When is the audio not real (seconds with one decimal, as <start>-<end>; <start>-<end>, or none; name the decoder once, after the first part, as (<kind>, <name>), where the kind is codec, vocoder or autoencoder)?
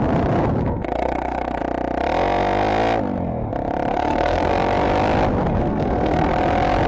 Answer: 0.6-1.6 (codec, SNAC); 3.9-4.5; 5.5-6.3